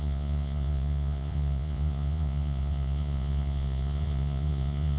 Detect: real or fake fake